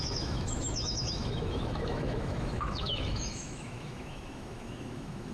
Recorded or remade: remade